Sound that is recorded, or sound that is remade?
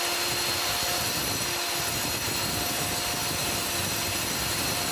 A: recorded